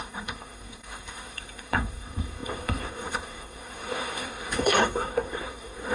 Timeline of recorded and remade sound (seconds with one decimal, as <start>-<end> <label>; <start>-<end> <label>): 0.0-5.9 remade